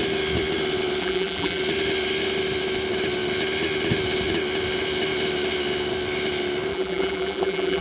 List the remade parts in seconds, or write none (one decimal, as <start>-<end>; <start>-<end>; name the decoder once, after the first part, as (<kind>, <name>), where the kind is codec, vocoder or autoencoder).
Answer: 1.0-1.6 (vocoder, BigVGAN v2); 6.7-7.8